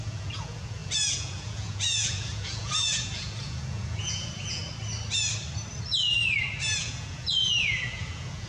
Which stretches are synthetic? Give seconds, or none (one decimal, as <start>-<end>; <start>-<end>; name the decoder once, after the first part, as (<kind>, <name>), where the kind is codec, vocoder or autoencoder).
0.0-4.6 (vocoder, Vocos); 6.8-8.5